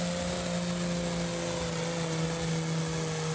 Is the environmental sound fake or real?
real